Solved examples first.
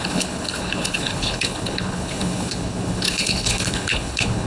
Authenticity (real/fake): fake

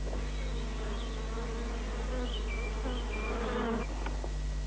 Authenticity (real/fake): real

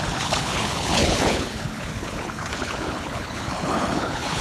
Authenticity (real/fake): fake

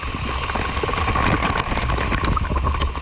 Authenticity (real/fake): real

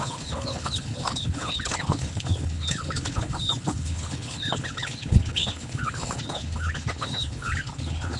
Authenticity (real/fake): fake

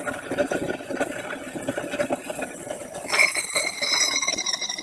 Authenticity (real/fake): real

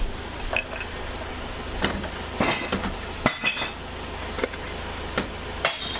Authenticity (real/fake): real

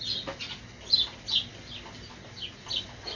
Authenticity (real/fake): real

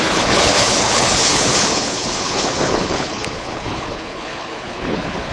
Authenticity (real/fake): fake